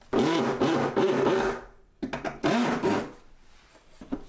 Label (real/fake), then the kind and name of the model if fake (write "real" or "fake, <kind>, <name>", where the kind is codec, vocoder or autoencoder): real